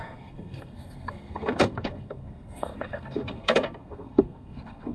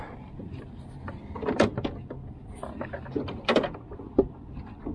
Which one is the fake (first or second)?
first